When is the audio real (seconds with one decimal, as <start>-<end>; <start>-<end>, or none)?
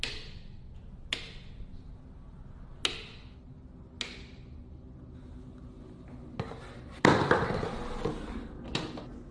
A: 0.0-9.3